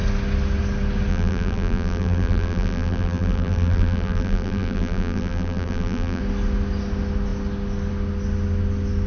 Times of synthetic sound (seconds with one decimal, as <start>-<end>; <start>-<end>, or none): 1.1-6.2